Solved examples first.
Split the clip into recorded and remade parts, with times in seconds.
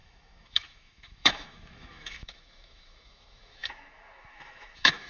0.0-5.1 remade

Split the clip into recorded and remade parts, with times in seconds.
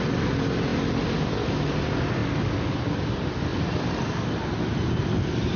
0.0-5.6 recorded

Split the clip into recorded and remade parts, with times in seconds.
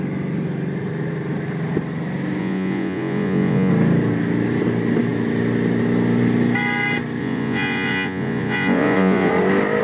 0.0-2.4 recorded; 2.4-3.7 remade; 3.7-7.2 recorded; 7.2-9.3 remade; 9.3-9.8 recorded